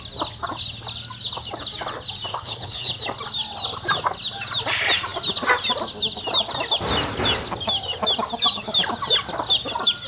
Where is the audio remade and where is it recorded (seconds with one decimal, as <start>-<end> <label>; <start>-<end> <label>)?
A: 0.0-2.3 recorded; 2.3-2.9 remade; 2.9-10.1 recorded